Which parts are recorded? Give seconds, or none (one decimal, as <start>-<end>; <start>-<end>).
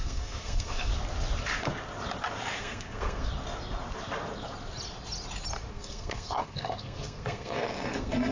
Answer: 0.9-2.6; 3.3-5.7